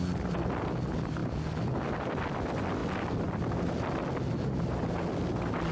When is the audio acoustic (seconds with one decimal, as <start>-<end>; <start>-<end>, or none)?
0.0-5.7